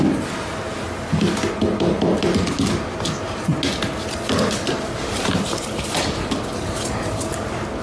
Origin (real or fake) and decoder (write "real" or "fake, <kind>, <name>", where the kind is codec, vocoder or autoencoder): real